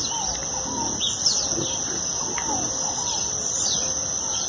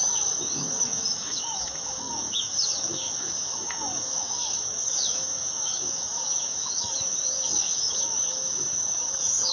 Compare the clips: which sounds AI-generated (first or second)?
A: second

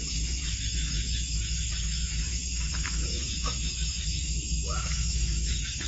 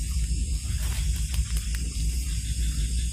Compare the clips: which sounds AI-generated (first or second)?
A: first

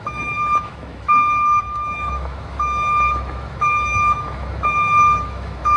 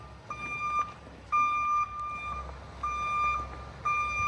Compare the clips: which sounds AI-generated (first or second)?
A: first